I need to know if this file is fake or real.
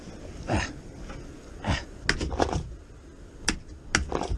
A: real